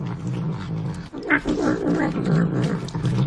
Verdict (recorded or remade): recorded